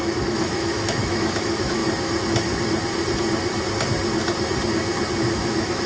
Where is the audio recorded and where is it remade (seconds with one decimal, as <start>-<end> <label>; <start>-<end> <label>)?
0.0-1.8 remade; 1.8-5.3 recorded; 5.3-5.9 remade